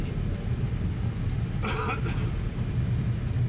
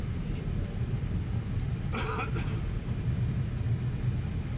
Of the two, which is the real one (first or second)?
first